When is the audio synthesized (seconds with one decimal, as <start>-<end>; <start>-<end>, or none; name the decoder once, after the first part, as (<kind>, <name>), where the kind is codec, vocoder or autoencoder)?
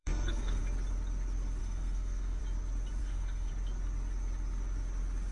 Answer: 0.0-0.6 (codec, SNAC); 1.6-2.4; 3.0-3.5